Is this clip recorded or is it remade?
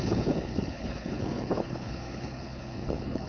remade